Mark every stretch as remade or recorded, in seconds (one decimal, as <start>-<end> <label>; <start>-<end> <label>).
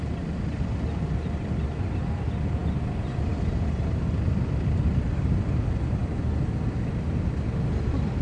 0.0-8.2 recorded